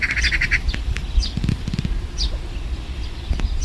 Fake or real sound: fake